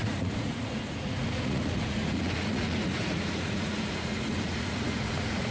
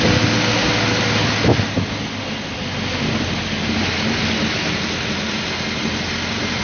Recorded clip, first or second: second